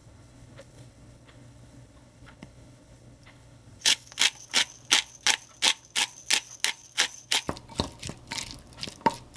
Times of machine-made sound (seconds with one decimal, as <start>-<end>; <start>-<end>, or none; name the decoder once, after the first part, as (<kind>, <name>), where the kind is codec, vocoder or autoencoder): 0.0-4.1 (codec, HILCodec)